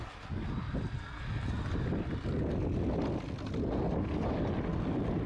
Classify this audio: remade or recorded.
recorded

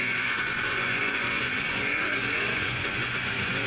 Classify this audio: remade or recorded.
remade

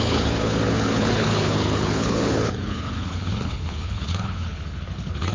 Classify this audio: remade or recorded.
remade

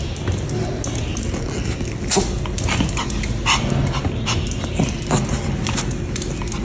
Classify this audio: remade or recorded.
recorded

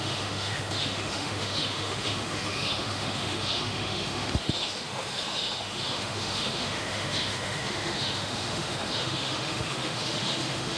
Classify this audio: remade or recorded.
remade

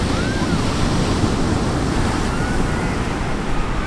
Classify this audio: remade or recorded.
recorded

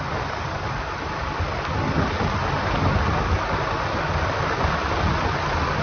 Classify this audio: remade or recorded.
recorded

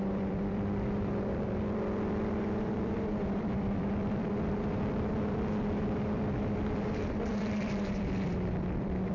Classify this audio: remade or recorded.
remade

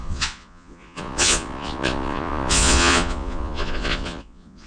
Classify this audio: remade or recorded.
remade